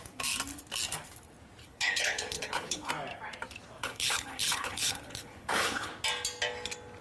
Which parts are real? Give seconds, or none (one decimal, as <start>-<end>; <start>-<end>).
0.0-1.6; 2.9-3.8; 5.9-7.0